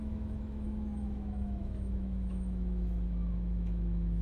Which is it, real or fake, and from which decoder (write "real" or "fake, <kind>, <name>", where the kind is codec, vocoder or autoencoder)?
fake, autoencoder, DAC-VAE